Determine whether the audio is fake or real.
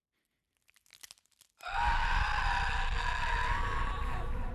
real